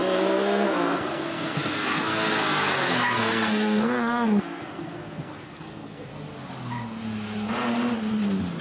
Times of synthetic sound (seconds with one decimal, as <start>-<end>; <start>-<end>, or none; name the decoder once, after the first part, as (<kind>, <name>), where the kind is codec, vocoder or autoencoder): 0.0-6.1 (codec, SNAC)